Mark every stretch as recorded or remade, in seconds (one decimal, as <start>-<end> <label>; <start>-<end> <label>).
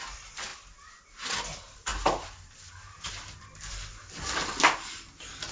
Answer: 0.0-5.5 recorded